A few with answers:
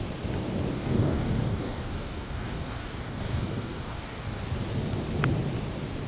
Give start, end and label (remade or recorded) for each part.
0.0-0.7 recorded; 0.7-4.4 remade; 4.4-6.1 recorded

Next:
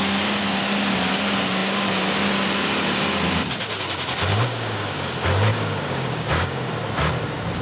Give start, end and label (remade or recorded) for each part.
0.0-4.3 recorded; 4.3-5.1 remade; 5.1-5.5 recorded; 5.5-6.7 remade; 6.7-7.6 recorded